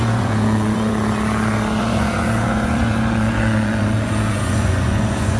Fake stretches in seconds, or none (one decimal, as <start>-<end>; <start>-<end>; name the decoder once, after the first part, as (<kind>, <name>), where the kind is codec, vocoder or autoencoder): 0.0-0.9 (vocoder, Vocos); 1.8-5.4